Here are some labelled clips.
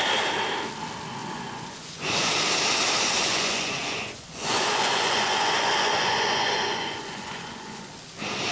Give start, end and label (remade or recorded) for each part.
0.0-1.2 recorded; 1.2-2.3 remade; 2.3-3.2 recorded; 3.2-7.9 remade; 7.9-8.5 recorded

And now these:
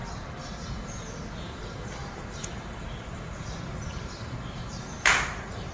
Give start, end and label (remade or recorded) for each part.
0.0-1.0 remade; 1.0-2.0 recorded; 2.0-5.3 remade; 5.3-5.7 recorded

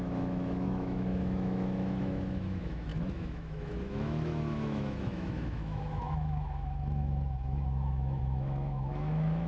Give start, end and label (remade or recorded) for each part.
0.0-9.5 remade

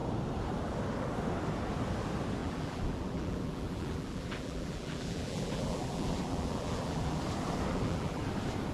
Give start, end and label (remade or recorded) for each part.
0.0-2.4 recorded; 2.4-7.2 remade; 7.2-7.7 recorded; 7.7-8.2 remade; 8.2-8.7 recorded

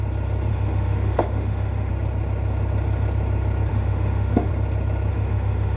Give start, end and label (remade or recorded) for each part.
0.0-0.5 recorded; 0.5-1.9 remade; 1.9-3.7 recorded; 3.7-4.5 remade; 4.5-5.1 recorded; 5.1-5.8 remade

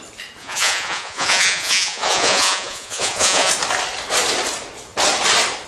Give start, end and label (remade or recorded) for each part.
0.0-0.4 recorded; 0.4-3.5 remade; 3.5-5.7 recorded

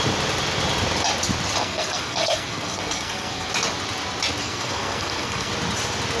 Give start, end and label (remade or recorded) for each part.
0.0-1.6 recorded; 1.6-3.5 remade; 3.5-4.4 recorded; 4.4-5.5 remade; 5.5-6.2 recorded

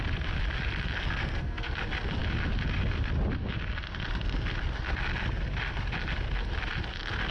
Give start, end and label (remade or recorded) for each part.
0.0-1.2 recorded; 1.2-1.7 remade; 1.7-7.3 recorded